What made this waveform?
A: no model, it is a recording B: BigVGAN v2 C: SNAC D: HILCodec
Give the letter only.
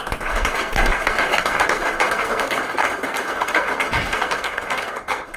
C